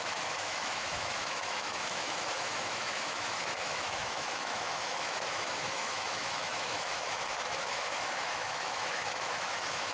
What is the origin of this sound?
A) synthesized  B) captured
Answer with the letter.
A